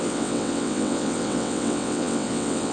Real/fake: fake